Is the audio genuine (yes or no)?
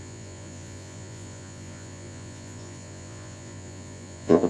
no